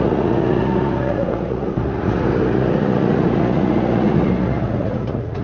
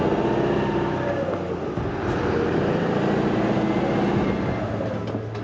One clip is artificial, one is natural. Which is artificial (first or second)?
first